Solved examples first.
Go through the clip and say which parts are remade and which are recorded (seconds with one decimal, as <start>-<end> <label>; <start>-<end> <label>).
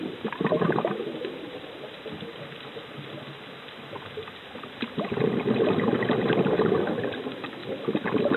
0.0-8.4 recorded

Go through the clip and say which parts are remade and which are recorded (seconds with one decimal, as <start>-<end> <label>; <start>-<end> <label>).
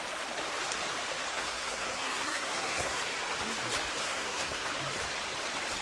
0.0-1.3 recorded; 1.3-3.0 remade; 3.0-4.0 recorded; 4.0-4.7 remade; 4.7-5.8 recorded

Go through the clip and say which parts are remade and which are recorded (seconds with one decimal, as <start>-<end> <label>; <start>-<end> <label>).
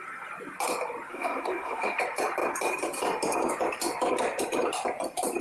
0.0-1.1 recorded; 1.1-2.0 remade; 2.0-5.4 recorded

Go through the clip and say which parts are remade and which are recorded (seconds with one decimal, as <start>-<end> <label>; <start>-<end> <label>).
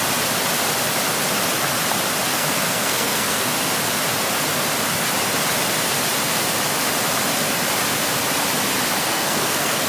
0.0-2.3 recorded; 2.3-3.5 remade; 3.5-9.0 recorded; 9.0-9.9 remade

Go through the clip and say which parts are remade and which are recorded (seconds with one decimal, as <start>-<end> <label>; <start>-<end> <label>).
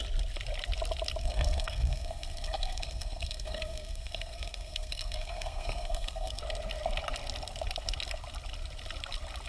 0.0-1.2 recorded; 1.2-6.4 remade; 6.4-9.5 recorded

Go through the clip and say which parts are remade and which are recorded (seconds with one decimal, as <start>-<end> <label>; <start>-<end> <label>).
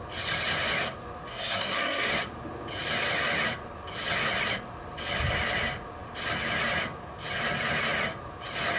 0.0-1.3 recorded; 1.3-2.1 remade; 2.1-8.8 recorded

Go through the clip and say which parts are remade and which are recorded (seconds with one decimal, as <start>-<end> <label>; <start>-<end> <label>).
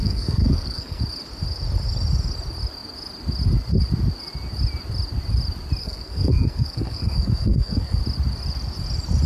0.0-1.0 remade; 1.0-5.8 recorded; 5.8-8.0 remade; 8.0-9.3 recorded